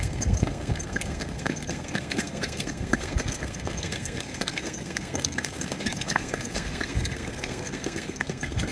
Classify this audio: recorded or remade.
remade